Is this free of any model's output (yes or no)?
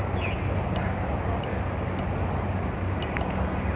yes